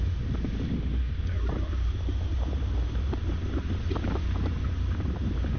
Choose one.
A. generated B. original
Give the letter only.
B